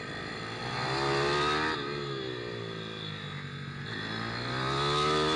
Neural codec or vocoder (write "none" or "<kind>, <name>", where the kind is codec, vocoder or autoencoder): none